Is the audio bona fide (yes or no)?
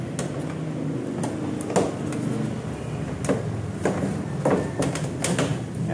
yes